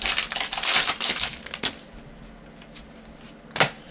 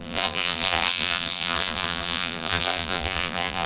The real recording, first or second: first